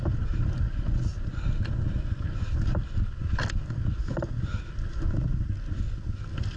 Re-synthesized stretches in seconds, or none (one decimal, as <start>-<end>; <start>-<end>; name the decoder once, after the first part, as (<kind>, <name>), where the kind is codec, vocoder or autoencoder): none